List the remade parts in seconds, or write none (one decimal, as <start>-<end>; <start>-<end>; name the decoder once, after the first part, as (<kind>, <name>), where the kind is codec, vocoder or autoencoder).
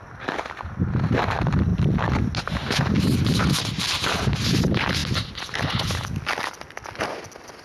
none